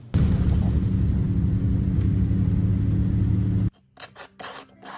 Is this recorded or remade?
recorded